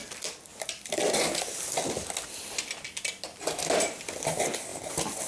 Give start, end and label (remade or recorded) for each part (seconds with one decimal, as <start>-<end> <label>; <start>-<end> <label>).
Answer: 0.0-5.3 recorded